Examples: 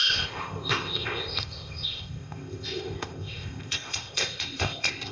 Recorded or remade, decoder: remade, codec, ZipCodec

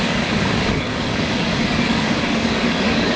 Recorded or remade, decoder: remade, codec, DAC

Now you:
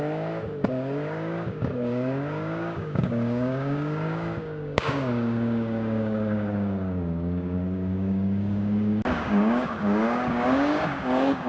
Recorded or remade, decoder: remade, codec, DAC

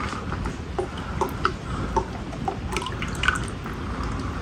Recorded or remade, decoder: recorded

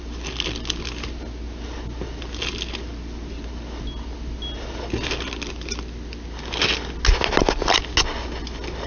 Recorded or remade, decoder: recorded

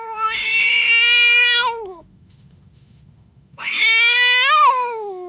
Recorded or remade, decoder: remade, autoencoder, DAC-VAE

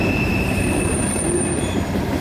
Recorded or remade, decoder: remade, vocoder, BigVGAN v2